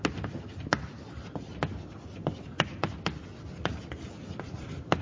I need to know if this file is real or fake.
real